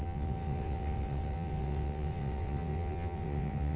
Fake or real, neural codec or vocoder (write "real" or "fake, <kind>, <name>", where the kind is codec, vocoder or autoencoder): fake, vocoder, WaveNeXt